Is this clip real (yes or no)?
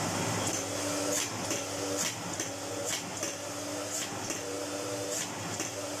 yes